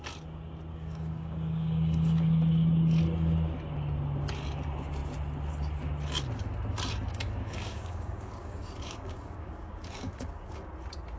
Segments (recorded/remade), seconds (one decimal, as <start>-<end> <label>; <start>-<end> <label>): 0.0-0.7 recorded; 0.7-2.4 remade; 2.4-7.1 recorded; 7.1-10.7 remade; 10.7-11.2 recorded